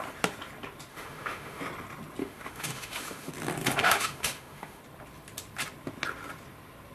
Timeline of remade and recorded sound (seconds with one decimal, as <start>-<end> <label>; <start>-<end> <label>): 0.0-0.9 recorded; 0.9-1.6 remade; 1.6-2.2 recorded; 2.2-3.3 remade; 3.3-3.8 recorded; 3.8-4.8 remade; 4.8-6.9 recorded